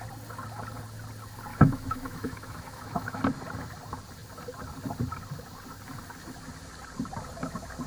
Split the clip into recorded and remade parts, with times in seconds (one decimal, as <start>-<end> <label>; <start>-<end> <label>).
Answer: 0.0-1.5 recorded; 1.5-3.2 remade; 3.2-7.9 recorded